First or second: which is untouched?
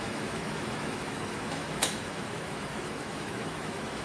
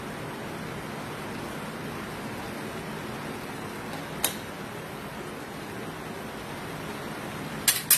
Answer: second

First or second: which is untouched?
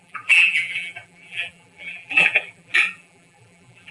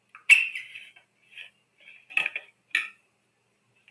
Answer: second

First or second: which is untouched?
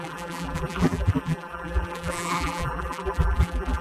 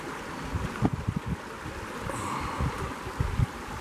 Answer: second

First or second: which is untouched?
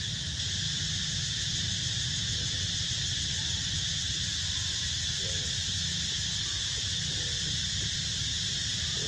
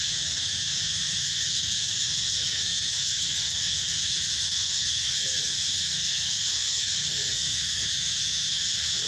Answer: first